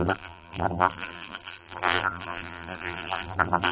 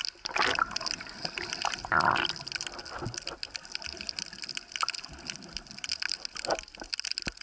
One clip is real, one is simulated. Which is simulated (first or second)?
first